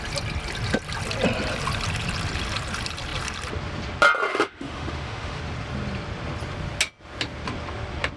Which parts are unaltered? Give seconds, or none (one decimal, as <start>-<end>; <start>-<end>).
0.0-4.3; 5.4-8.2